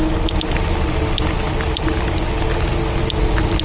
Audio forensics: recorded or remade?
recorded